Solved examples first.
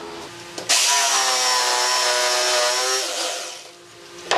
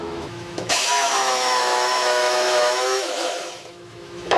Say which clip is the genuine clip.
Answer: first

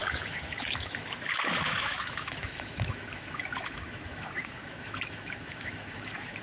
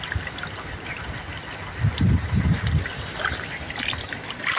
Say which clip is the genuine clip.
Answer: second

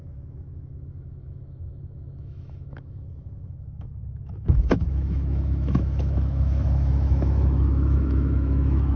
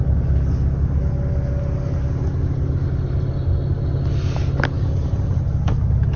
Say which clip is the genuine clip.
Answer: second